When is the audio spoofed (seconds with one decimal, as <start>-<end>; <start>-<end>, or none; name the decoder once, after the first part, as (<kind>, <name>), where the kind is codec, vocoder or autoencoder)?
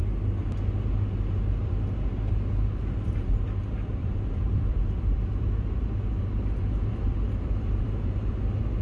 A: 4.0-8.3 (vocoder, BigVGAN v2)